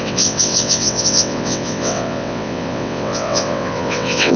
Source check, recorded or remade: remade